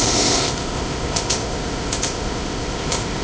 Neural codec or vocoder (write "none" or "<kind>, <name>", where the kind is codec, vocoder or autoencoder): codec, ZipCodec